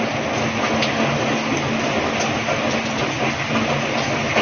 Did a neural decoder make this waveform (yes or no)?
no